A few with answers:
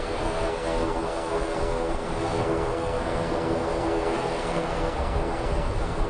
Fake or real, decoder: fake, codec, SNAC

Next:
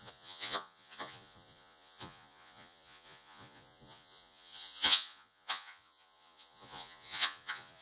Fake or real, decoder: fake, vocoder, Vocos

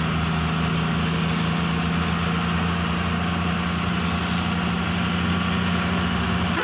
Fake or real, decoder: real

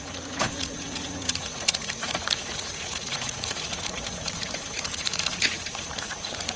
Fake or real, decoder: fake, vocoder, Vocos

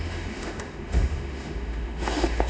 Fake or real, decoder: fake, autoencoder, DAC-VAE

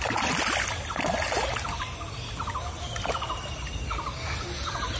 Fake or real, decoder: real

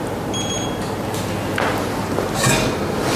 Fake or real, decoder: real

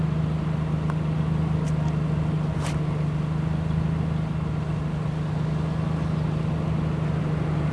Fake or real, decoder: real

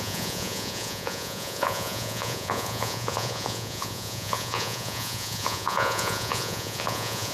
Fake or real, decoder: fake, vocoder, Vocos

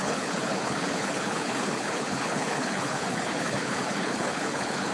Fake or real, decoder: fake, codec, HILCodec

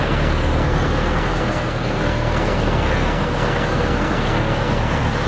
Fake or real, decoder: fake, codec, SNAC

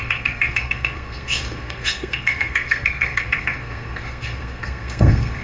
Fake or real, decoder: fake, codec, SNAC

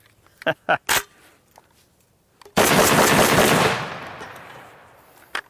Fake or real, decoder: real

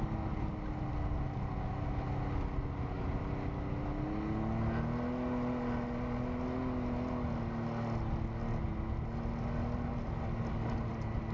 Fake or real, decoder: real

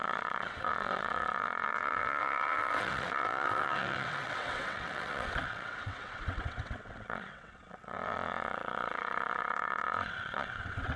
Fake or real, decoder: fake, vocoder, WaveNeXt